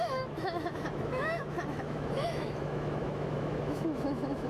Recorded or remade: remade